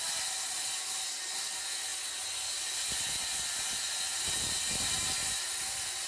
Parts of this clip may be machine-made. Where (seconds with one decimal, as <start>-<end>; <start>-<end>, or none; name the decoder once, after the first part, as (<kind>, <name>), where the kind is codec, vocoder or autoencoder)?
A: none